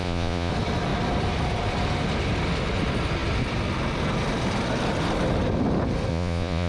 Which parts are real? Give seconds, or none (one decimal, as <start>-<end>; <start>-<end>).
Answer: 0.5-6.1